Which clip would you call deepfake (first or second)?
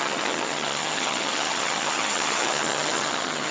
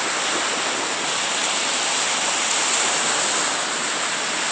first